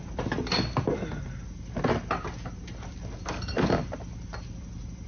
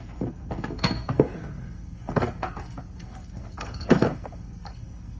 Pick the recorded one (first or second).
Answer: first